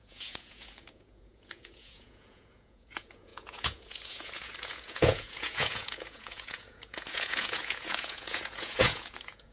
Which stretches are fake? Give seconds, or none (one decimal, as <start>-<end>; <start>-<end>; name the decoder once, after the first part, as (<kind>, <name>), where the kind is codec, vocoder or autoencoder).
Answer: 0.0-9.5 (vocoder, Vocos)